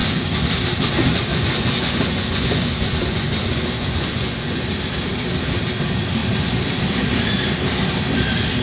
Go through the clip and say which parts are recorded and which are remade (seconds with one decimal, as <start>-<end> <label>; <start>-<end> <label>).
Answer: 0.0-0.5 remade; 0.5-1.3 recorded; 1.3-4.6 remade; 4.6-8.6 recorded